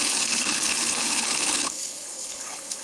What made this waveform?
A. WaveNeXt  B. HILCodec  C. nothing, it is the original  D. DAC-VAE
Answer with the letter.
B